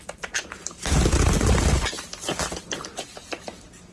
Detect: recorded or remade recorded